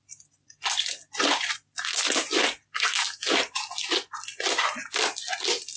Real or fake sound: real